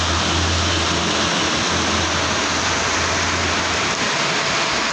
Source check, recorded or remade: recorded